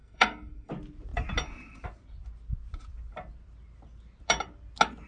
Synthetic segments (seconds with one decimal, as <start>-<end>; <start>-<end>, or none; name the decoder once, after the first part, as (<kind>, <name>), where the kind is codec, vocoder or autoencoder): 0.0-0.7 (codec, SNAC)